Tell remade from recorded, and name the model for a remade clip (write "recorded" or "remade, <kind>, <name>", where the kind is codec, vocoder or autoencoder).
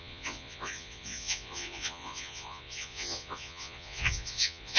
remade, vocoder, Vocos